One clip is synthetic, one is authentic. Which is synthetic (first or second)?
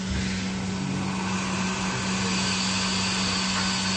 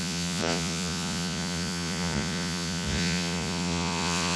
second